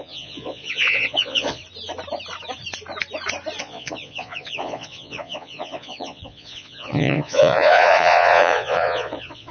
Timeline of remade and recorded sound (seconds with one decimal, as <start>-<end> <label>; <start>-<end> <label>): 0.0-1.6 remade; 1.6-3.6 recorded; 3.6-9.5 remade